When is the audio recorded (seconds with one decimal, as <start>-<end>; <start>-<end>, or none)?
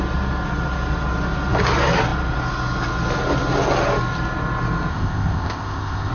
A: 0.0-4.9